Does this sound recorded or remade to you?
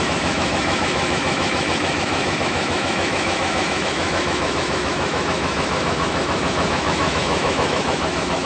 remade